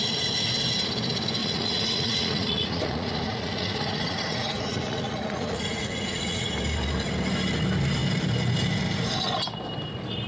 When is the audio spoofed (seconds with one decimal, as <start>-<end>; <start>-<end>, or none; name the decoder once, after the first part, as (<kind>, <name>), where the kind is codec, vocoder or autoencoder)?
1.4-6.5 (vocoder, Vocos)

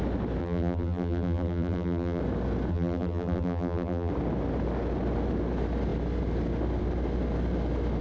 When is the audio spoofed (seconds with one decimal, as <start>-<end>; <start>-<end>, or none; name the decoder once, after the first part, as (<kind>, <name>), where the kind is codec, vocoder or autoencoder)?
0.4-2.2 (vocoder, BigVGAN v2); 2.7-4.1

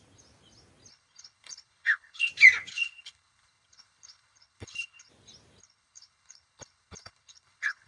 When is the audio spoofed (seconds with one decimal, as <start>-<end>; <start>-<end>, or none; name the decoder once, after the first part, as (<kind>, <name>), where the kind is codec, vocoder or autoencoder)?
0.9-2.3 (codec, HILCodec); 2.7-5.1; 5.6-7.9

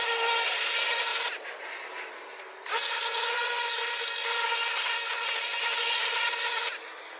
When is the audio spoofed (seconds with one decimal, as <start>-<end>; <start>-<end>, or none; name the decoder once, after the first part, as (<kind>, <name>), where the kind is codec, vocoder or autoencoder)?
none

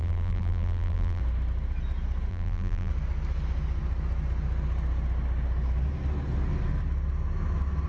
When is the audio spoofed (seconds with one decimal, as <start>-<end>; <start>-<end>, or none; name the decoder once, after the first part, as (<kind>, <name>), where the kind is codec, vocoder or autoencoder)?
0.0-1.2 (vocoder, BigVGAN v2); 2.3-2.9

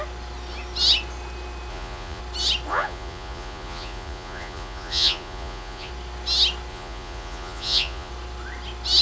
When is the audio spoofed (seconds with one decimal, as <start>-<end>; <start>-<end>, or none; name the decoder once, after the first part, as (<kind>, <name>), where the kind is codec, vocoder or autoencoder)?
1.7-2.2 (vocoder, Vocos); 2.7-5.9; 6.7-8.1

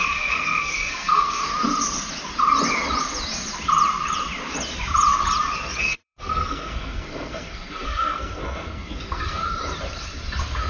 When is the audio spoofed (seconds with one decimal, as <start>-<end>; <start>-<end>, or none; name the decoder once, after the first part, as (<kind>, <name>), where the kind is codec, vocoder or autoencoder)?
0.0-1.5 (codec, SNAC); 5.8-9.4

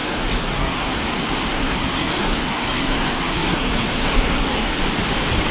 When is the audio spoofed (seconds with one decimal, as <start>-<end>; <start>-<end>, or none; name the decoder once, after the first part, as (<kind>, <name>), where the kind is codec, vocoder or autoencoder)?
0.0-1.1 (codec, SNAC); 1.5-4.8